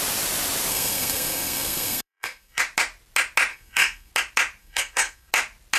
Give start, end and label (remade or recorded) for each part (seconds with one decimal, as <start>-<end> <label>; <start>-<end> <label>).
0.0-0.7 recorded; 0.7-2.6 remade; 2.6-3.5 recorded; 3.5-4.1 remade; 4.1-4.6 recorded; 4.6-5.3 remade; 5.3-5.8 recorded